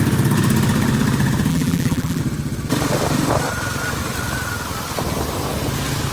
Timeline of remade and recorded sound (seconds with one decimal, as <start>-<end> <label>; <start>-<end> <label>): 0.0-1.5 recorded; 1.5-2.2 remade; 2.2-6.1 recorded